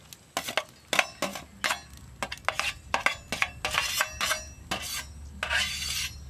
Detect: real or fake real